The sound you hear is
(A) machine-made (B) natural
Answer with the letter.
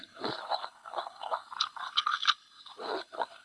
A